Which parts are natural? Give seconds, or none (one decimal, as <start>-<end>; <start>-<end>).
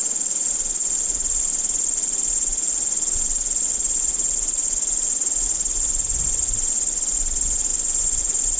0.0-7.7; 8.2-8.6